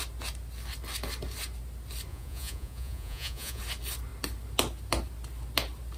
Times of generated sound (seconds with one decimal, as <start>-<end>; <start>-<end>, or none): 2.1-3.6